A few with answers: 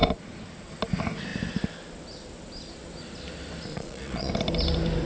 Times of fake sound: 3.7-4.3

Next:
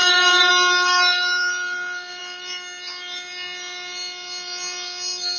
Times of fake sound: 0.0-0.5

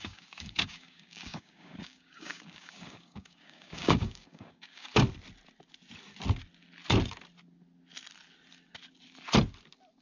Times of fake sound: 0.0-4.9

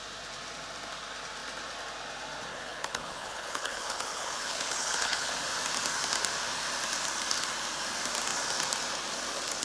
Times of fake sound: 2.5-5.3

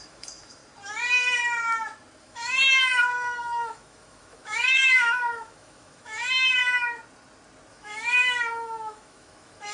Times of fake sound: 0.0-0.6; 2.2-6.6; 7.7-9.7